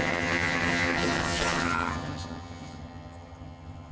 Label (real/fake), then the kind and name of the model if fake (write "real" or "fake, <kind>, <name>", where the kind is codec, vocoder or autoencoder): fake, vocoder, HiFi-GAN